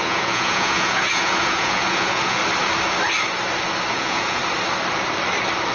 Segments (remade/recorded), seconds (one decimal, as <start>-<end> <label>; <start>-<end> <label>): 0.0-2.4 remade; 2.4-3.9 recorded; 3.9-4.4 remade; 4.4-5.7 recorded